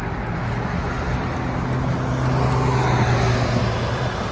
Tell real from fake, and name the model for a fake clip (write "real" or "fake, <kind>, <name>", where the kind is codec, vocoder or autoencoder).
real